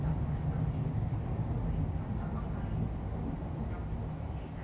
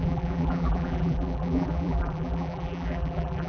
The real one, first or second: first